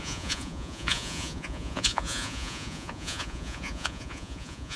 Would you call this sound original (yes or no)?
no